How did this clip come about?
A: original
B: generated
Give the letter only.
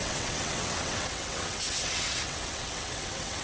B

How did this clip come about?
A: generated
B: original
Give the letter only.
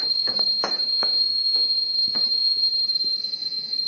A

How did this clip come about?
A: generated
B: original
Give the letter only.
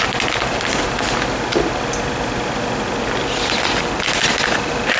B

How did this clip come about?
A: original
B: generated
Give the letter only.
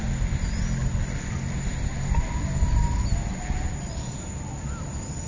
A